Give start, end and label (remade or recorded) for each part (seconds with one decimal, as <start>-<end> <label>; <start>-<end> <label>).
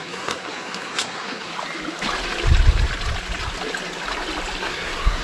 0.0-1.5 remade; 1.5-4.6 recorded; 4.6-5.2 remade